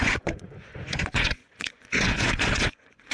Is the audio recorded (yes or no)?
no